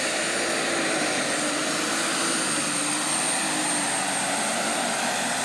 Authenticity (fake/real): real